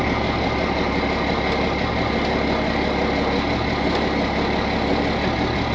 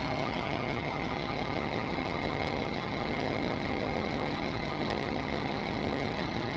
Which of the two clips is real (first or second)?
first